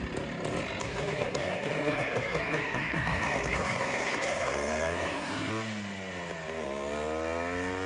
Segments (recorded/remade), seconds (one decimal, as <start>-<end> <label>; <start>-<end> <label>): 0.0-0.8 recorded; 0.8-5.5 remade; 5.5-7.9 recorded